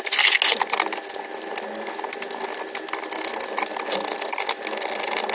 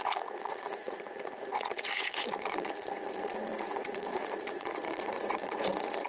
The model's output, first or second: second